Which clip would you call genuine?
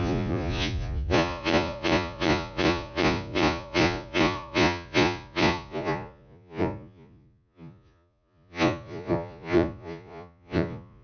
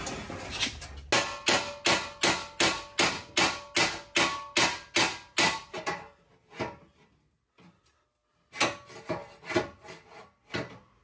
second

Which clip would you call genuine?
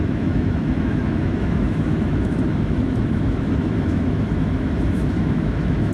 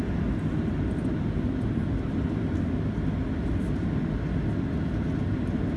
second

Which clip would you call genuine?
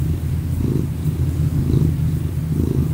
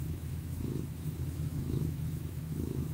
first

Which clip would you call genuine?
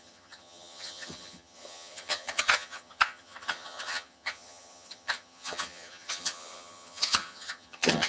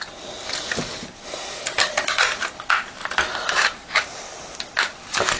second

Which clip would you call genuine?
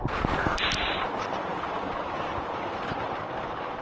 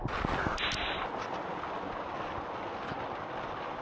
second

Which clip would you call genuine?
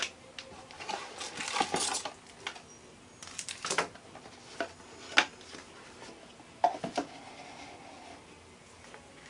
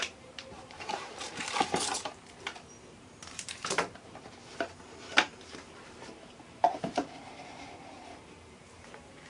first